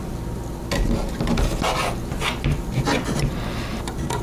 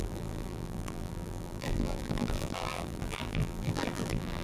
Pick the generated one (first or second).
second